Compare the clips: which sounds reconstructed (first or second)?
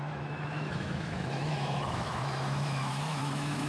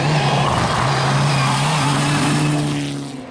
first